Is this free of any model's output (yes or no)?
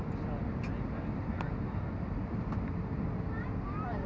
yes